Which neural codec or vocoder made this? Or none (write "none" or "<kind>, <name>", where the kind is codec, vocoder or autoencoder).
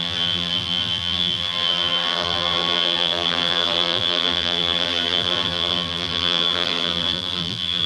vocoder, BigVGAN v2